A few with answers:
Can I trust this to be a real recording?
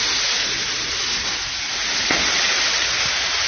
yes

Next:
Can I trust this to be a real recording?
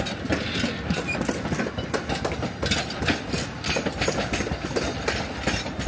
yes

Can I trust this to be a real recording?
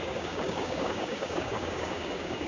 no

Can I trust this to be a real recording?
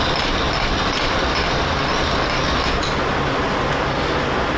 yes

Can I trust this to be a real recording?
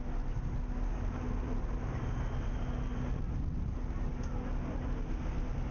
yes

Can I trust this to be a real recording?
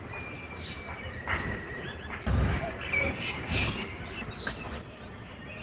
yes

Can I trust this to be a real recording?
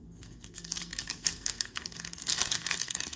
no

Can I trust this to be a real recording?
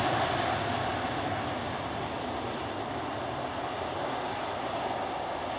yes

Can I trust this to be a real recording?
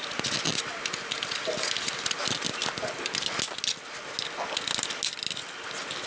yes